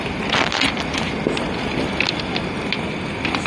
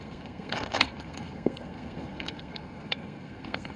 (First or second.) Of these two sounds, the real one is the first